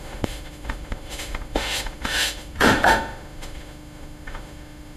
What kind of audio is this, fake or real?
fake